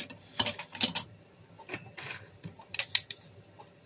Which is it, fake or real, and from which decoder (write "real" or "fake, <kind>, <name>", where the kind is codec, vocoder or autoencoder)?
real